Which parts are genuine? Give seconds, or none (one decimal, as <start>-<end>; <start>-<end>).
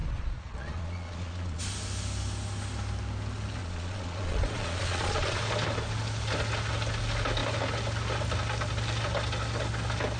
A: 1.6-3.6; 5.4-10.2